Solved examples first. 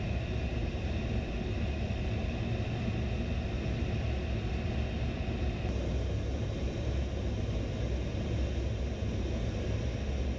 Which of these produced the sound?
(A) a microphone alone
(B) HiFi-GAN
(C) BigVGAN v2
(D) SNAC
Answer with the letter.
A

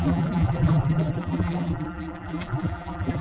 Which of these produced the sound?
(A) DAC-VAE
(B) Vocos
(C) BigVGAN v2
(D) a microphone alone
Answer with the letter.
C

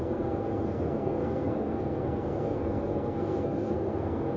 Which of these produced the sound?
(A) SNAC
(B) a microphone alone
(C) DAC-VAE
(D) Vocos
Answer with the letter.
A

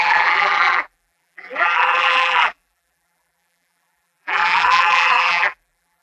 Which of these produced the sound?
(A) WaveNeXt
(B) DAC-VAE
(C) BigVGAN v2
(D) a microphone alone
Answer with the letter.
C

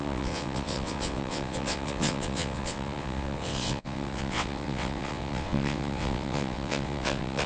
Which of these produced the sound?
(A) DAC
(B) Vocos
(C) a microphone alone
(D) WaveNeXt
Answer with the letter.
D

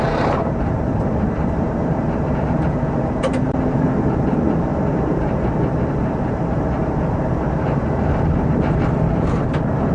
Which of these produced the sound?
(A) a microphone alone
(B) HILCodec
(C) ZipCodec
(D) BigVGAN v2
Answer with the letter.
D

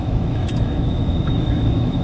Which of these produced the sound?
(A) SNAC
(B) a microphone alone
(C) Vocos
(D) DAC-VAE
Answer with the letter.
D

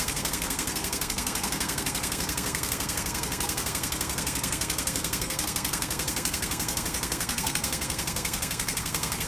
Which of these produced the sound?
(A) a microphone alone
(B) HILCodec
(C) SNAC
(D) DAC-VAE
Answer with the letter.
C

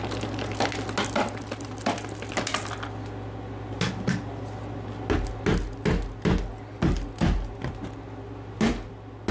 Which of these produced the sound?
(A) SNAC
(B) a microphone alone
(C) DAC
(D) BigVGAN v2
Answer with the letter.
B